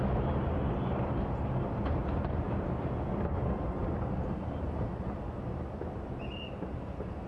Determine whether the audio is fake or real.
real